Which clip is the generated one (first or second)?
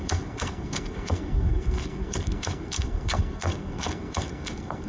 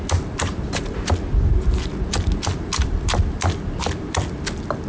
first